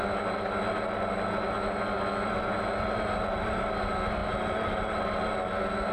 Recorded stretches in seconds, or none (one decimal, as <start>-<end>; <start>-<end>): 0.0-5.9